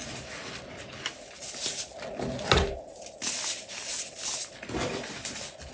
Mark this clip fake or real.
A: real